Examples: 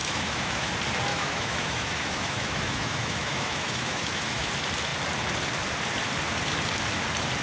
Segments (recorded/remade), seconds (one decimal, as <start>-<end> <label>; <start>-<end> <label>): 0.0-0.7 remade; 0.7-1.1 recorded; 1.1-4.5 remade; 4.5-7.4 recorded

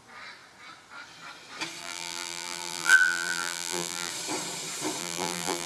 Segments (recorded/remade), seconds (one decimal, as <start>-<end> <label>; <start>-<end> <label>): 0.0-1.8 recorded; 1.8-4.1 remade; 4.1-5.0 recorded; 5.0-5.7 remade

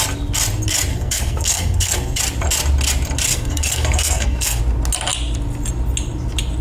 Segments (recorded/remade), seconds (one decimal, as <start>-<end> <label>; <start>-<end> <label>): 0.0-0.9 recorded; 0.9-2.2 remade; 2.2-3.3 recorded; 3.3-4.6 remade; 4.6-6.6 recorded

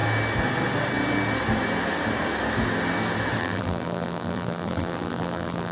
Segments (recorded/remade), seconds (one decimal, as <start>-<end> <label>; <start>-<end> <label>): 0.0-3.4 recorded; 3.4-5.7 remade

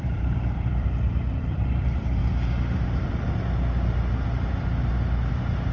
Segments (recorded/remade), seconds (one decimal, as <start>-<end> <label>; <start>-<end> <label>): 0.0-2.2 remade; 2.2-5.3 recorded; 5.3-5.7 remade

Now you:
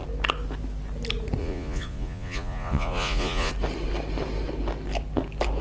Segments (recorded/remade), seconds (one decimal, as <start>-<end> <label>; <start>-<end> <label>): 0.0-1.4 recorded; 1.4-3.5 remade; 3.5-5.6 recorded

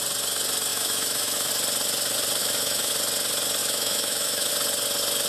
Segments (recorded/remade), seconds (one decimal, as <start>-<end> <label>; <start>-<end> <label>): 0.0-0.7 recorded; 0.7-1.5 remade; 1.5-2.4 recorded; 2.4-2.9 remade; 2.9-3.6 recorded; 3.6-4.5 remade; 4.5-5.3 recorded